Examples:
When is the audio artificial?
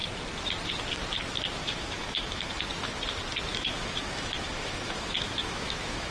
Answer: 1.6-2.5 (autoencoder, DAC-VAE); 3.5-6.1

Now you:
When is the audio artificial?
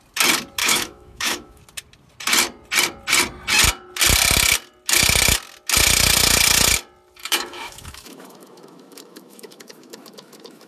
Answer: 0.6-1.6 (autoencoder, DAC-VAE); 7.2-10.7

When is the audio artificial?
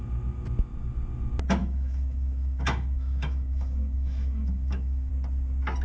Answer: 1.6-5.1 (autoencoder, DAC-VAE)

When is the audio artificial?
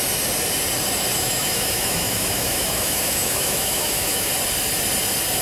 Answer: 1.1-4.3 (autoencoder, DAC-VAE)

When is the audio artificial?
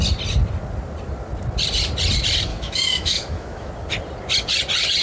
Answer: 2.5-3.7 (autoencoder, DAC-VAE)